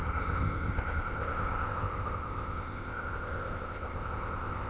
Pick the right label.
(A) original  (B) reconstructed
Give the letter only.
B